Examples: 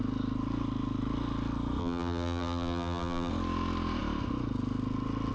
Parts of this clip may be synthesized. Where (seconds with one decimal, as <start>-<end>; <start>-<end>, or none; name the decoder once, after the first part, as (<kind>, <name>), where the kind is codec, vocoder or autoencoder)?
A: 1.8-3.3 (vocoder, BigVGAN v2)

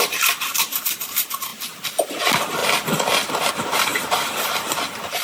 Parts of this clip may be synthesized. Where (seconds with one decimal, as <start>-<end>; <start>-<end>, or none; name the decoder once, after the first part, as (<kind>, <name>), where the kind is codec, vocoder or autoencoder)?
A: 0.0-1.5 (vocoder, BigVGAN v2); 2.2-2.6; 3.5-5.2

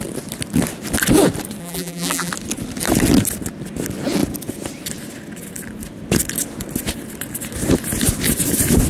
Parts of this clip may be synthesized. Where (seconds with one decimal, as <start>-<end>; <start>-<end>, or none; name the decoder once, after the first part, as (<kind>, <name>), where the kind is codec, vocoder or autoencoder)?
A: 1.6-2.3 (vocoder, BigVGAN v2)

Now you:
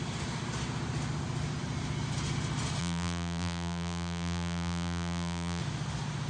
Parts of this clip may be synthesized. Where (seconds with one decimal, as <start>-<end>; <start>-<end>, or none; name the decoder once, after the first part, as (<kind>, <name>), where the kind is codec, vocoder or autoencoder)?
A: 2.8-5.6 (vocoder, BigVGAN v2)

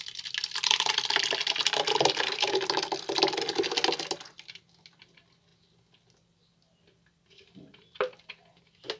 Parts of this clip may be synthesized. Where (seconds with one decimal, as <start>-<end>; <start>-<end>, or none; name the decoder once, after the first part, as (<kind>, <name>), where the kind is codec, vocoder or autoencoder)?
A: none

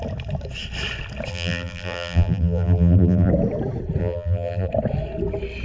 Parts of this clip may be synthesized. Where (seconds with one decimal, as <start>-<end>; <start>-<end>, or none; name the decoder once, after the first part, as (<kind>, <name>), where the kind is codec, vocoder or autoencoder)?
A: 1.3-3.3 (vocoder, BigVGAN v2); 4.0-4.7

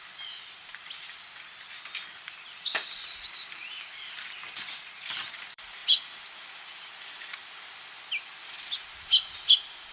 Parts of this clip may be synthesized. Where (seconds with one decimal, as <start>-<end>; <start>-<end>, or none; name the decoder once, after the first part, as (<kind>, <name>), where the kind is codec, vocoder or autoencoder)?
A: 0.0-9.9 (vocoder, BigVGAN v2)

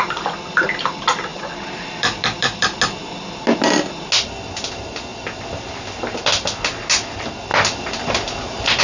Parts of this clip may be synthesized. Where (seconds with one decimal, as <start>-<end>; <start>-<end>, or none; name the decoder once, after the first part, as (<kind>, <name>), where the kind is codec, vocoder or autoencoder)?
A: 1.3-2.8 (vocoder, BigVGAN v2)